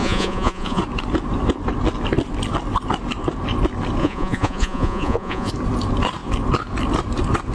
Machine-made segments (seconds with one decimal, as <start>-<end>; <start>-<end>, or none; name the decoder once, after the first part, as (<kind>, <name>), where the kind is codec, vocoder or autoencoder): 0.0-0.8 (vocoder, Vocos); 4.0-5.5